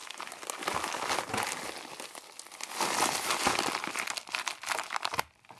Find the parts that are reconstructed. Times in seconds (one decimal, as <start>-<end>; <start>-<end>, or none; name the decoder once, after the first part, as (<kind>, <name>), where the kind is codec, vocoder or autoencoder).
none